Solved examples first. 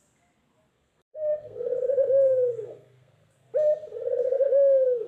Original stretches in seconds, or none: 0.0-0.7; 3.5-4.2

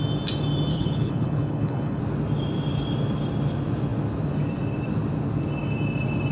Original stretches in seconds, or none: 0.0-0.7; 2.0-6.3